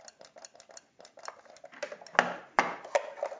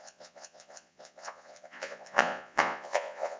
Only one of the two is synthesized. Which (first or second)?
second